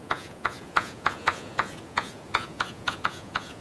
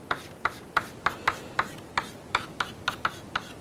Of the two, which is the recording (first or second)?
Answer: second